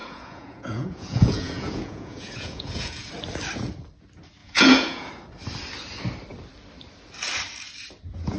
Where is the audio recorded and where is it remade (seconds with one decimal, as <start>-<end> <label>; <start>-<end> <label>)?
0.0-3.1 remade; 3.1-4.4 recorded; 4.4-5.1 remade; 5.1-8.4 recorded